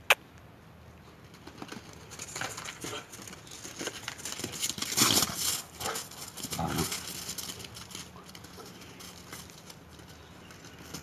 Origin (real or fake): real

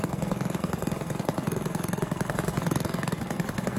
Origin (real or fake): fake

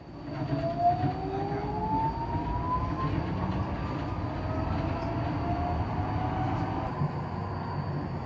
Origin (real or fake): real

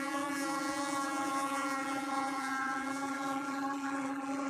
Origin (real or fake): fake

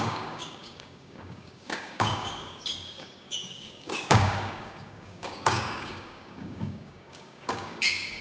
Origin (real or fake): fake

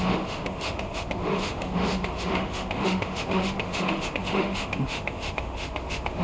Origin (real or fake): fake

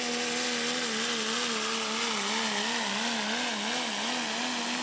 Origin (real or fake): real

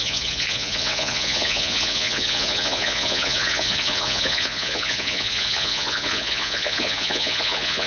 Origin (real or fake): fake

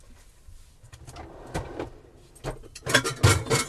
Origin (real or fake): real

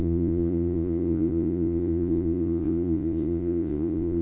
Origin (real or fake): fake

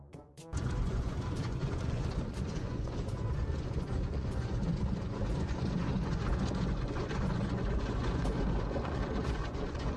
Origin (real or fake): fake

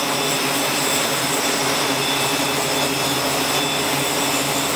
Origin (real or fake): real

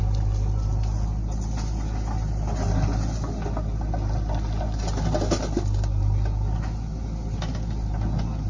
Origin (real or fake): real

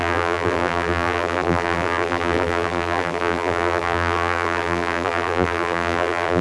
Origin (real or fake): fake